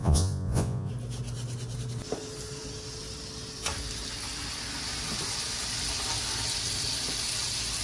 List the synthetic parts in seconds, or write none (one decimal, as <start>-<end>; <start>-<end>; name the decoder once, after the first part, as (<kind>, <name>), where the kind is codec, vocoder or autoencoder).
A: 0.0-0.9 (vocoder, Vocos)